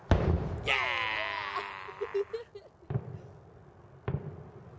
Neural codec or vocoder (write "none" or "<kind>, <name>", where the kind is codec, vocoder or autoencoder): none